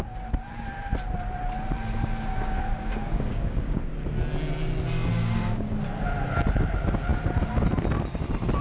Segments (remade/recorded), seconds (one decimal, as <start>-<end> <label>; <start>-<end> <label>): 0.0-2.3 recorded; 2.3-3.9 remade; 3.9-5.1 recorded; 5.1-5.7 remade; 5.7-8.6 recorded